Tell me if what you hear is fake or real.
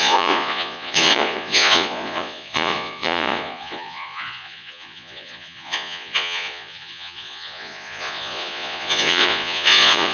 fake